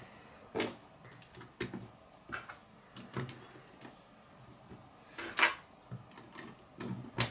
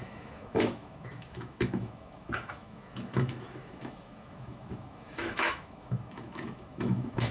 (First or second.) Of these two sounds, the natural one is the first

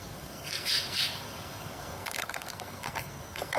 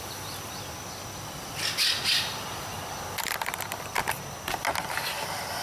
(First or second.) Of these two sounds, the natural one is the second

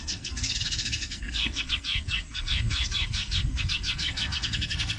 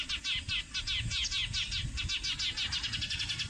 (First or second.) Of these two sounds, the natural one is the second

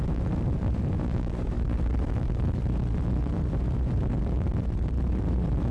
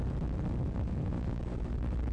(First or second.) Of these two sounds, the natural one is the second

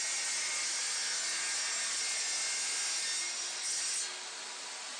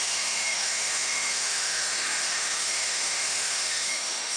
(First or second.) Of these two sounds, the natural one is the first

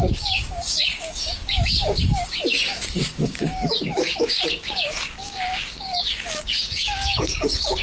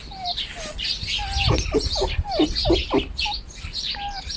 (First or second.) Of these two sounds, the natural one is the second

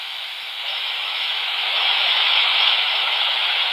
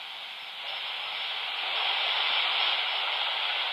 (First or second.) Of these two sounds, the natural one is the second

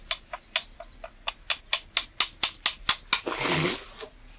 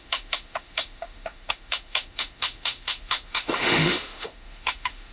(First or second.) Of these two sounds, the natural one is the first